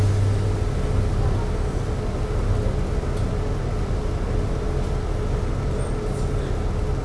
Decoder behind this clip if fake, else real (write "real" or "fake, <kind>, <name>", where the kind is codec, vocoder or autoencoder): real